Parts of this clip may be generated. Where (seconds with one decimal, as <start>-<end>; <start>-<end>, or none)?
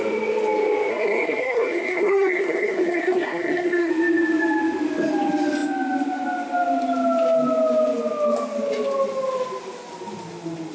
0.9-3.9